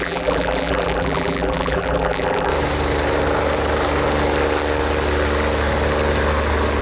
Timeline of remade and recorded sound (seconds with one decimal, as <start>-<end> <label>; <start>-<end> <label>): 0.0-2.5 remade; 2.5-6.8 recorded